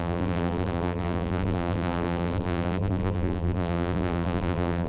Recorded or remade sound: remade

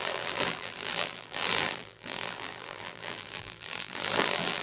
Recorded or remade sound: remade